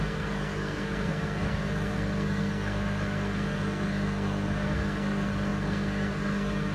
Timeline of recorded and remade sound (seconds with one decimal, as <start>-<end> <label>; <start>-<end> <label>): 0.0-6.7 remade